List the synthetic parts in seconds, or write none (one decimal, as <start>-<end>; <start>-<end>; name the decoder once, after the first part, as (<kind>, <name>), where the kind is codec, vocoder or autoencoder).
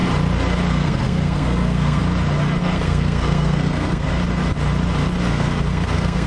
0.7-2.0 (codec, SNAC); 2.6-4.2; 5.3-6.3